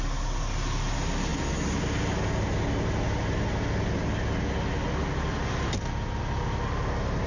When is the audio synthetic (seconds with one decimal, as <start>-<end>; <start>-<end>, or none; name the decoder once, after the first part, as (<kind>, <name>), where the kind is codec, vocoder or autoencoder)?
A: none